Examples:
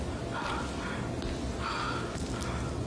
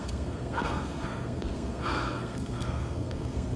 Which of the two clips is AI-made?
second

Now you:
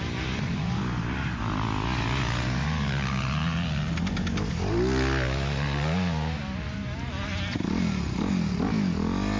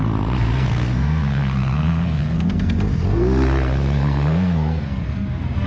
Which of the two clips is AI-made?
second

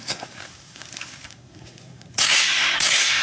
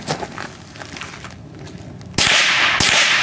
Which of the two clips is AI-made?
first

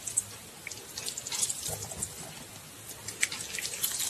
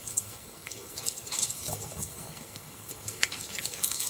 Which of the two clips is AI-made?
second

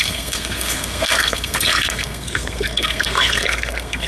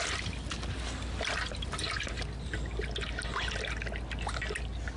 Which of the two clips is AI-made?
first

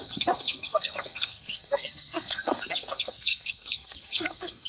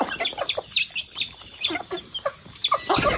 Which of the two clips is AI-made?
first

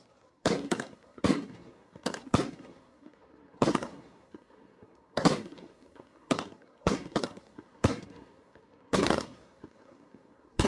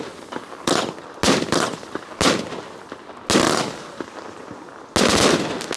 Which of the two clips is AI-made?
first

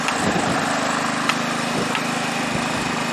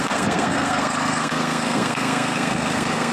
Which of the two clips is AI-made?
second